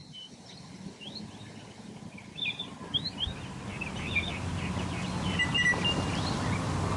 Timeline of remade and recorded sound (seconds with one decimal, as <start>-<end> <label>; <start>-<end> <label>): 0.0-7.0 recorded